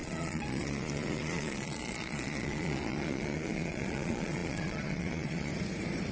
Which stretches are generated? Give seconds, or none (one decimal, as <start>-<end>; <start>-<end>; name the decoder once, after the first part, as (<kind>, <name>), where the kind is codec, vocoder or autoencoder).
0.0-5.5 (vocoder, Vocos)